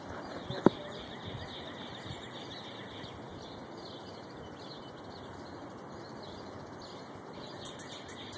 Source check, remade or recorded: recorded